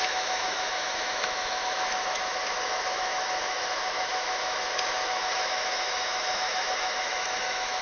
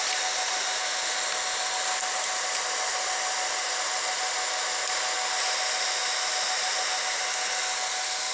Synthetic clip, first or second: first